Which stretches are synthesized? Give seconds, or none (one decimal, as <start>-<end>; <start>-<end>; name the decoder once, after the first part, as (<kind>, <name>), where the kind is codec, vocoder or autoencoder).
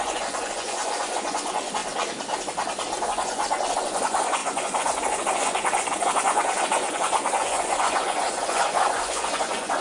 0.0-1.8 (vocoder, Vocos); 3.0-9.8